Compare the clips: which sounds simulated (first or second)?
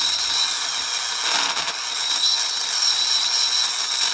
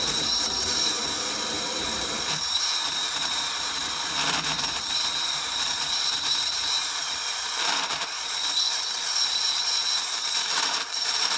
second